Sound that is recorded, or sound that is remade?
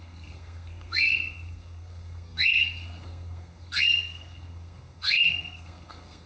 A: remade